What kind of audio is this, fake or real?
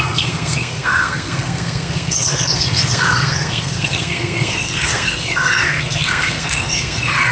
fake